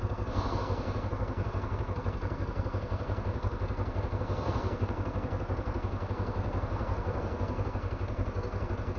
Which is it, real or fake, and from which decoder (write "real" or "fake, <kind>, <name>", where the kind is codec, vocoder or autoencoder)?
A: fake, codec, SNAC